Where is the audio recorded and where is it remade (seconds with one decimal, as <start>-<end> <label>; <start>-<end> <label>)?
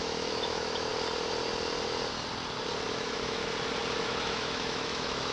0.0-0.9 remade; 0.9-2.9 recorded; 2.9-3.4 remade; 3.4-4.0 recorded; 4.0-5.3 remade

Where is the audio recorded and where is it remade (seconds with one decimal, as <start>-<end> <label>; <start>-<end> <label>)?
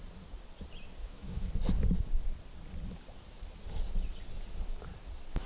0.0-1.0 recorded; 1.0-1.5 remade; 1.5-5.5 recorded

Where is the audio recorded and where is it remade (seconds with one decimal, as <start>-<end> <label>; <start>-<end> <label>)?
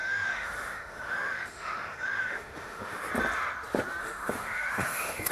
0.0-3.1 remade; 3.1-4.0 recorded; 4.0-5.3 remade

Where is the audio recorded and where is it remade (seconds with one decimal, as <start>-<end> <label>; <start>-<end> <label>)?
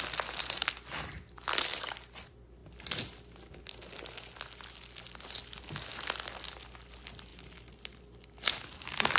0.0-9.2 recorded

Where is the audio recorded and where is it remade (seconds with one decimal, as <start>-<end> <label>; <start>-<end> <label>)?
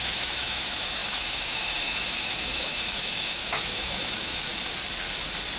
0.0-4.5 remade; 4.5-5.6 recorded